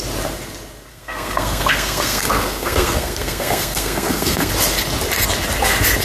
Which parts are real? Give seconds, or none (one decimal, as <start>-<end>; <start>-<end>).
0.0-0.9; 4.5-6.0